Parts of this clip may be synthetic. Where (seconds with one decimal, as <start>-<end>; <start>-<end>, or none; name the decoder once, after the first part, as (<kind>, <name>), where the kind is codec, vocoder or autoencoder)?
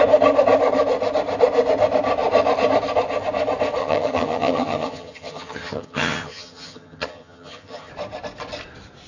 3.8-7.9 (vocoder, HiFi-GAN)